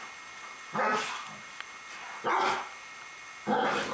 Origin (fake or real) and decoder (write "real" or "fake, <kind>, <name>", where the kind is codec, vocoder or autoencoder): real